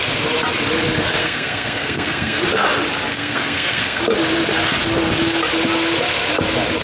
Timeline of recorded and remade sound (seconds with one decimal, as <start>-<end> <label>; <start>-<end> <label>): 0.0-1.2 recorded; 1.2-2.4 remade; 2.4-3.1 recorded; 3.1-4.0 remade; 4.0-6.8 recorded